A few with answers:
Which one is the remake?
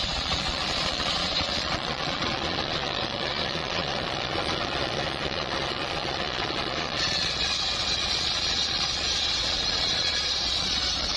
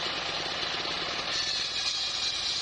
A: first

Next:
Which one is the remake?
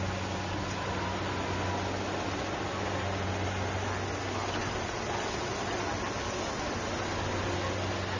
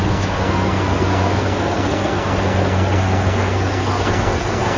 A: second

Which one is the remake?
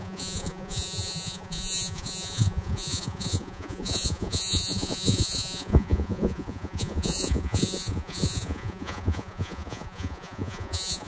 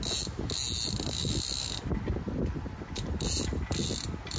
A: first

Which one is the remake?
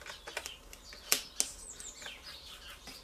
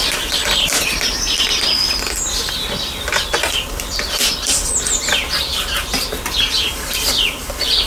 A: second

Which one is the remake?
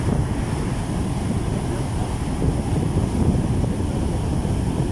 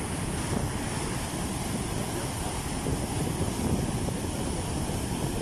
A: second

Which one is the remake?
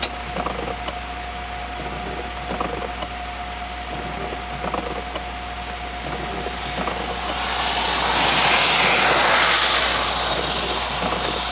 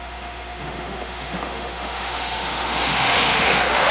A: second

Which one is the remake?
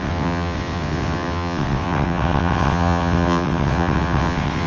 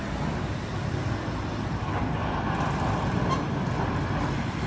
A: first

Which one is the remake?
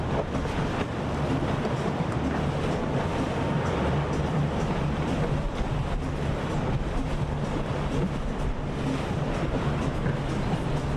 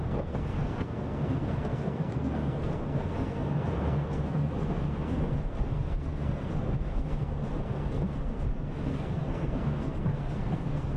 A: second